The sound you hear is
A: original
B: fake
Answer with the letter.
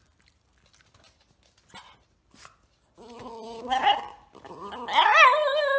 A